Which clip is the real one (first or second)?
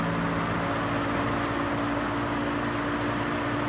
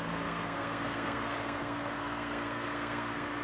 first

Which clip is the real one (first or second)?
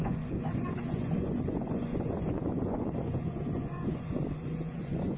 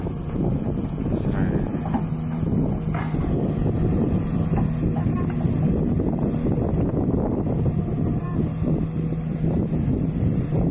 second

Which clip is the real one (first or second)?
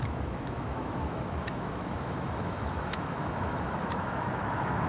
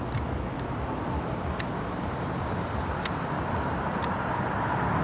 second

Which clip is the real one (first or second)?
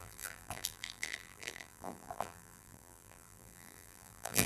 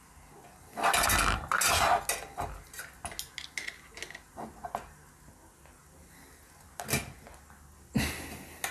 second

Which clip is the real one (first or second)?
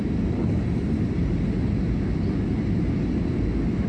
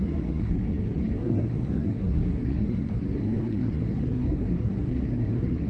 first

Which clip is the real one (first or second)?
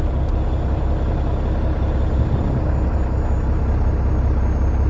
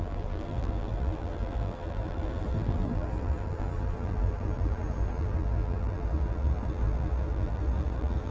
first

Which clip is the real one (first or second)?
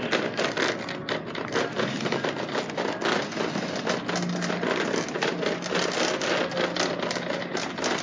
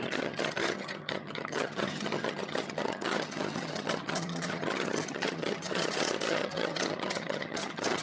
first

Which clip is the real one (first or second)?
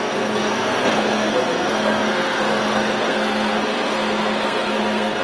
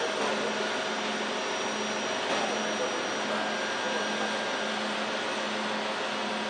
second